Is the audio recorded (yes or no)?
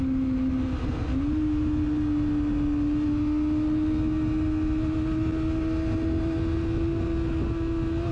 yes